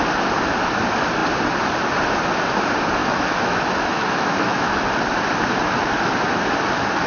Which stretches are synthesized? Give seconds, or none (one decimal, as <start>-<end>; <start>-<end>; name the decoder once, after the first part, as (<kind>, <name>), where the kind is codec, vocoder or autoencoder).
3.0-4.8 (autoencoder, DAC-VAE)